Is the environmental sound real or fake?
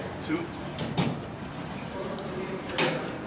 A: fake